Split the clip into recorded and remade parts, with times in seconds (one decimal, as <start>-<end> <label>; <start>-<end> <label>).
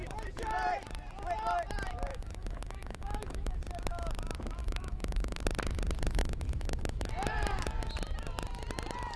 0.0-2.1 recorded; 2.1-3.6 remade; 3.6-4.6 recorded; 4.6-5.4 remade; 5.4-6.2 recorded; 6.2-7.1 remade; 7.1-9.2 recorded